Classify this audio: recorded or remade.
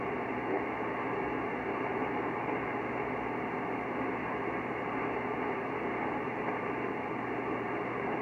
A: recorded